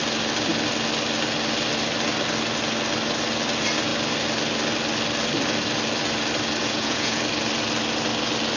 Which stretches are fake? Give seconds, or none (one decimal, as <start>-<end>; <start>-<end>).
6.6-7.2